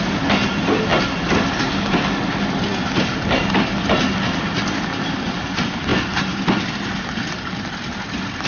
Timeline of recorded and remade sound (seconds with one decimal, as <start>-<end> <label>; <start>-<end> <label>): 0.0-5.9 recorded; 5.9-8.1 remade; 8.1-8.5 recorded